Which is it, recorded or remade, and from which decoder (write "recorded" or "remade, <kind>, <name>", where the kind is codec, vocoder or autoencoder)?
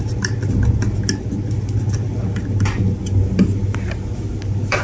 recorded